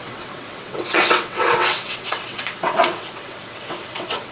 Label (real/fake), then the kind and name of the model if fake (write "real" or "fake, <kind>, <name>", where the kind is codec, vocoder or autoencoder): fake, vocoder, WaveNeXt